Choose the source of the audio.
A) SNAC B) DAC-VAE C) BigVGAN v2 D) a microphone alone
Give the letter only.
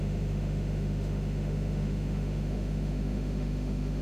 B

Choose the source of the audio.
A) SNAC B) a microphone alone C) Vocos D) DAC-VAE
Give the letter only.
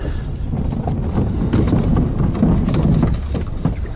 B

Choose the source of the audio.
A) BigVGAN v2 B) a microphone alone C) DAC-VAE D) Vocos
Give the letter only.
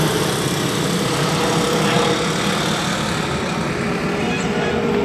B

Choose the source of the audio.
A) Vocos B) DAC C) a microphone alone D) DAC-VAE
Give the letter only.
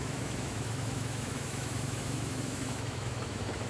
D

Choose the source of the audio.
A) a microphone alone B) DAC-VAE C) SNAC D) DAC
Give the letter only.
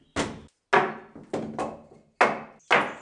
A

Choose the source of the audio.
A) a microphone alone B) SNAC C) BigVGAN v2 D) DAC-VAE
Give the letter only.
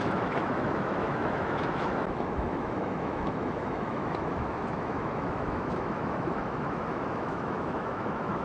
D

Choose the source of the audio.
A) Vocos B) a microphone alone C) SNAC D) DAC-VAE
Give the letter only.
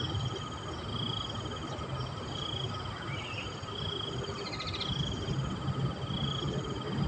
B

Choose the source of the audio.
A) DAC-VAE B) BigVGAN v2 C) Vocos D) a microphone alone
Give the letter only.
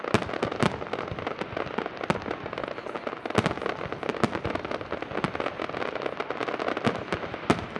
D